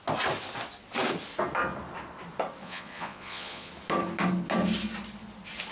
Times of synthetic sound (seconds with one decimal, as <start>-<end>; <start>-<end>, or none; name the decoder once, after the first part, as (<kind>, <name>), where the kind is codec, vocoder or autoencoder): 2.6-3.7 (vocoder, Vocos)

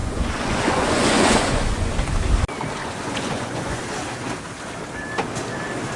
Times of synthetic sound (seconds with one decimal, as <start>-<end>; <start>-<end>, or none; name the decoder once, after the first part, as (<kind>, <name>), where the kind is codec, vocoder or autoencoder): 0.0-1.9 (vocoder, Vocos); 2.8-3.8

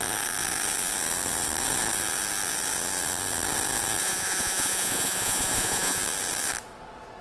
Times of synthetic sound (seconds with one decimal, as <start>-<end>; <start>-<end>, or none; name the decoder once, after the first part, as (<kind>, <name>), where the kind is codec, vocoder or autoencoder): 4.0-6.0 (vocoder, Vocos)

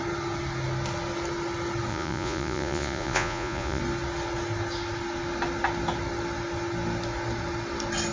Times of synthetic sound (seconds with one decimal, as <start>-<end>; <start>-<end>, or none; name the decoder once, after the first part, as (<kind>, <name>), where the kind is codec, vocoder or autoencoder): 1.9-3.8 (vocoder, Vocos)

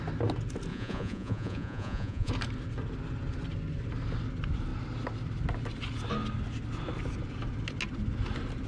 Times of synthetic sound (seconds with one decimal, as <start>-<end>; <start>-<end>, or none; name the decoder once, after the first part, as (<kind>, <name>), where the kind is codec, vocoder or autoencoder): 0.7-2.3 (vocoder, Vocos)

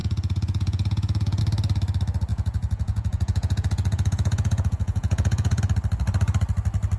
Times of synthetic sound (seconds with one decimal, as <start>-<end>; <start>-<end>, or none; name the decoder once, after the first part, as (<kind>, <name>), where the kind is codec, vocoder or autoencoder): 0.0-1.4 (vocoder, Vocos); 2.3-5.6

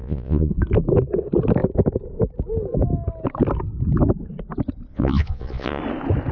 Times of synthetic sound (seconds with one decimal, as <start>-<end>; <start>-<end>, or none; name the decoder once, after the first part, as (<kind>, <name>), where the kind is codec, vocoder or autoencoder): 0.0-0.5 (vocoder, Vocos); 4.9-5.8

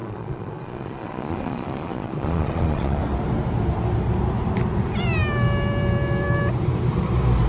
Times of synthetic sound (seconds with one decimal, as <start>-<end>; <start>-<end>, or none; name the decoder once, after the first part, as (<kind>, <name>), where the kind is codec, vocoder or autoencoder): 0.0-3.0 (vocoder, Vocos)